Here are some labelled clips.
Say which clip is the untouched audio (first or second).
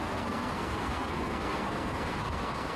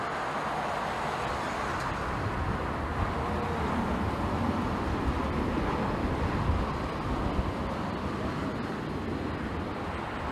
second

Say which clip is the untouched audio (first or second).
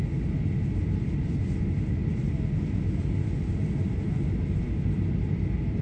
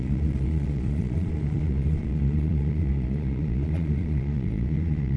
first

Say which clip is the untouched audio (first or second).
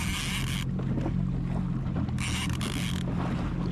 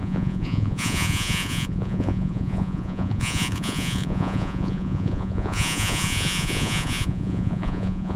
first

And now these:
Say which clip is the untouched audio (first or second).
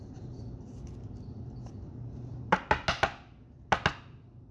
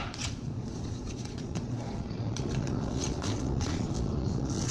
first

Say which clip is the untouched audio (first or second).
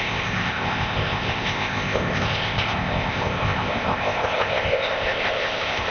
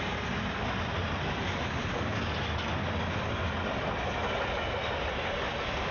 second